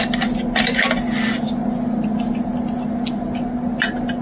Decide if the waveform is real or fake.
real